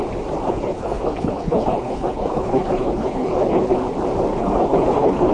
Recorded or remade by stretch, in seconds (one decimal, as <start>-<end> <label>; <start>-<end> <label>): 0.0-0.5 recorded; 0.5-3.7 remade; 3.7-4.3 recorded; 4.3-5.3 remade